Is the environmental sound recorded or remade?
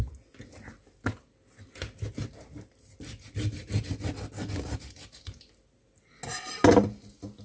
recorded